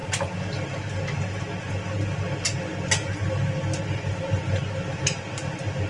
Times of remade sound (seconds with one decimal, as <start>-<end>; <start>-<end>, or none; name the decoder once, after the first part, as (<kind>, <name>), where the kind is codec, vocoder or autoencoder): none